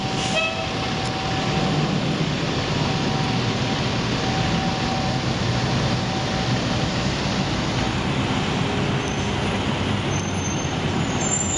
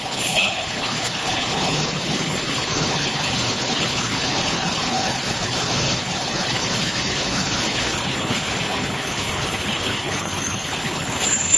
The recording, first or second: first